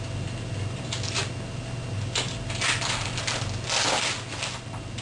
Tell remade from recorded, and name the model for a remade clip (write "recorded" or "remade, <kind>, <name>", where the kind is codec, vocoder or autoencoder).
recorded